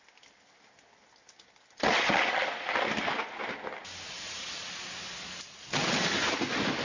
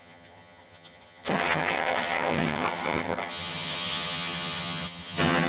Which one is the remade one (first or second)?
second